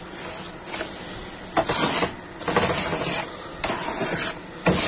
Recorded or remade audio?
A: recorded